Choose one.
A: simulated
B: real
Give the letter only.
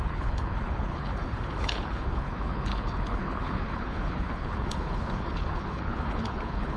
A